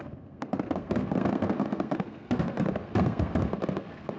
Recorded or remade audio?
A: remade